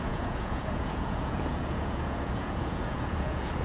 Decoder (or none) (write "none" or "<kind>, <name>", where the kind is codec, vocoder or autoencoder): vocoder, Vocos